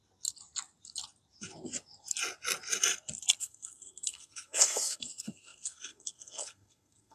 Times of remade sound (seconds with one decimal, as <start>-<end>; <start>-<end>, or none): 3.4-7.1